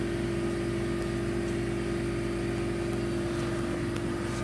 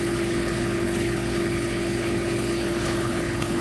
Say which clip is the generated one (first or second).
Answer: second